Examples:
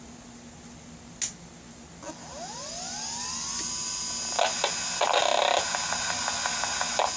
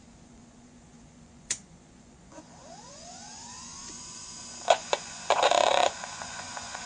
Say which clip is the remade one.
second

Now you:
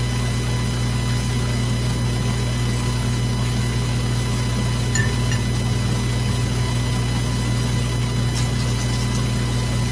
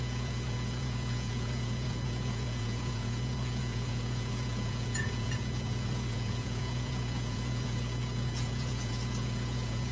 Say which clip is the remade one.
second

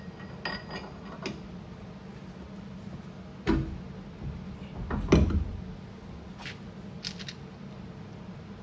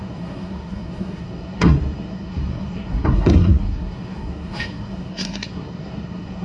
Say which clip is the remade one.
second